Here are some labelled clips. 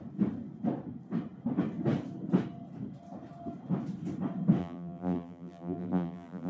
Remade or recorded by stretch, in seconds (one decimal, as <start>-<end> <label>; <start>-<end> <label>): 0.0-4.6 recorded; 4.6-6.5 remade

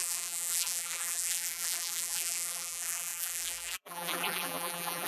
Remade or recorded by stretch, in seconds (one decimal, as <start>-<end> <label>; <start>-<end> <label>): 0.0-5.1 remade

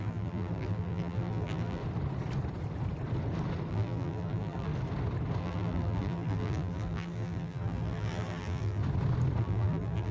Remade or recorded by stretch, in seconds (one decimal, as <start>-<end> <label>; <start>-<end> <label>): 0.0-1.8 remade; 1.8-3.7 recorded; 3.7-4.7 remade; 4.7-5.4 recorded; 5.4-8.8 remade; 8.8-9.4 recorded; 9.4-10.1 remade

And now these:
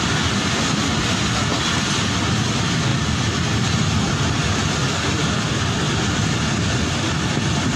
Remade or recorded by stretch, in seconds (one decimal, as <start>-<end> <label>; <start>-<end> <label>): 0.0-7.8 recorded